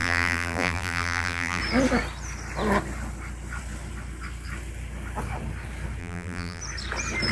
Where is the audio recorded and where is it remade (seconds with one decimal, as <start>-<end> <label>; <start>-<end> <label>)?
0.0-1.6 remade; 1.6-6.0 recorded; 6.0-6.6 remade; 6.6-7.3 recorded